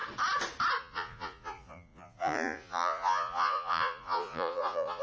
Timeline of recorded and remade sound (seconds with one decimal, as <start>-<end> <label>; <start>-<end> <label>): 0.0-0.8 recorded; 0.8-5.0 remade